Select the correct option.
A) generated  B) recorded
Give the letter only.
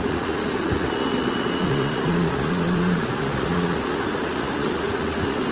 A